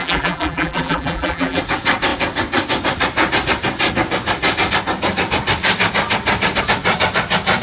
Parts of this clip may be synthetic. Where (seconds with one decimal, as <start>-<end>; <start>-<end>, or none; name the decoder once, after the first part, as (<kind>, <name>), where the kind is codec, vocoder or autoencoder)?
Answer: 0.0-1.6 (vocoder, BigVGAN v2)